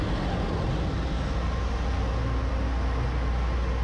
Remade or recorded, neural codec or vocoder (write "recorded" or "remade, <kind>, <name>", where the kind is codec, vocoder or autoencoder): recorded